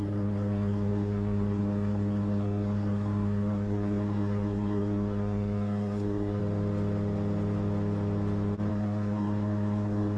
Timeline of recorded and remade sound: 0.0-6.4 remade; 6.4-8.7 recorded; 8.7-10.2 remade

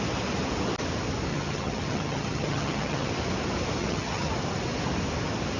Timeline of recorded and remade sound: 0.0-1.3 recorded; 1.3-3.1 remade; 3.1-3.8 recorded; 3.8-4.3 remade; 4.3-5.6 recorded

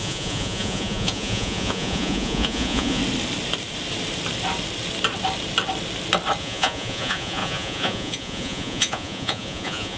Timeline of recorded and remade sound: 0.0-3.0 remade; 3.0-6.4 recorded; 6.4-10.0 remade

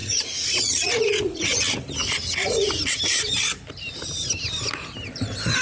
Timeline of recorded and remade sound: 0.0-1.6 remade; 1.6-2.0 recorded; 2.0-2.7 remade; 2.7-5.6 recorded

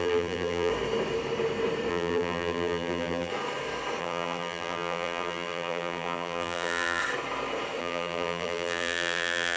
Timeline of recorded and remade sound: 0.0-0.7 remade; 0.7-1.9 recorded; 1.9-3.3 remade; 3.3-4.0 recorded; 4.0-7.0 remade; 7.0-7.8 recorded; 7.8-9.6 remade

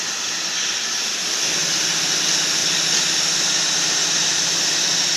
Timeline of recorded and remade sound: 0.0-5.2 recorded

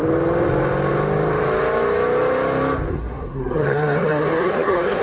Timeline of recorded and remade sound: 0.0-2.9 recorded; 2.9-5.0 remade

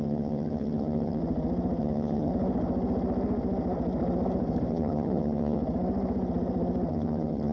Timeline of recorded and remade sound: 0.0-1.2 remade; 1.2-1.8 recorded; 1.8-2.3 remade; 2.3-4.7 recorded; 4.7-5.6 remade; 5.6-6.9 recorded; 6.9-7.5 remade